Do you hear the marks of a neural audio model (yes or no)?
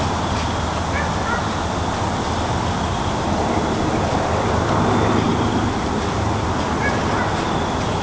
no